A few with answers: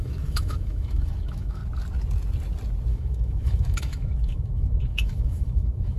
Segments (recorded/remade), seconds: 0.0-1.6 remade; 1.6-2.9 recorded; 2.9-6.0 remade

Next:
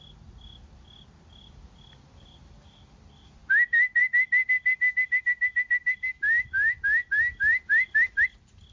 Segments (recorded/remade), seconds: 0.0-8.7 recorded

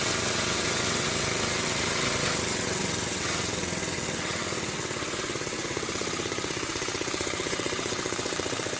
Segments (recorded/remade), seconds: 0.0-8.8 remade

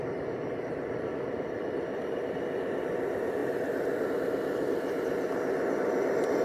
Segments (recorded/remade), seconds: 0.0-6.4 recorded